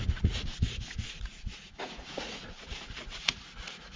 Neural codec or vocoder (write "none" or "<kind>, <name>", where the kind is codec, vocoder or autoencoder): vocoder, Vocos